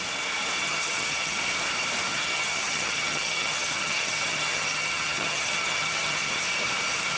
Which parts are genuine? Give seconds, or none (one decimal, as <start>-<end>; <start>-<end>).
0.0-0.6; 1.4-2.1; 6.4-7.2